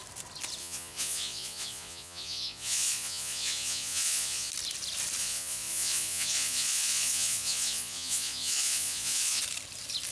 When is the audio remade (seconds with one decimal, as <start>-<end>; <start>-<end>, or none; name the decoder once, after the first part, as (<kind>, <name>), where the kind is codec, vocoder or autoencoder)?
0.6-4.5 (vocoder, Vocos); 5.2-9.4